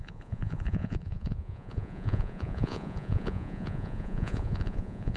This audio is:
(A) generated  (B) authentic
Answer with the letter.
A